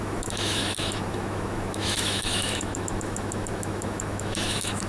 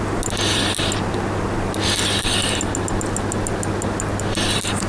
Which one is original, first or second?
second